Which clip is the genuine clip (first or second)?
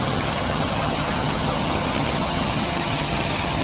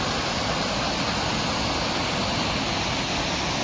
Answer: second